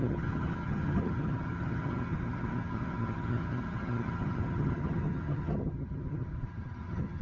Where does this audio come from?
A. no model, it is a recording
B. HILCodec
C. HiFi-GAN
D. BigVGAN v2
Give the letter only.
C